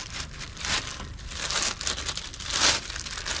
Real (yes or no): yes